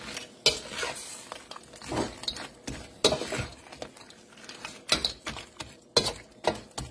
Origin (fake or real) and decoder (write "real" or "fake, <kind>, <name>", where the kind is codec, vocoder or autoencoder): real